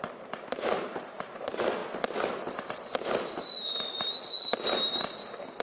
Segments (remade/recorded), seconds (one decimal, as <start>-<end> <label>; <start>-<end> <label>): 0.0-1.8 remade; 1.8-5.6 recorded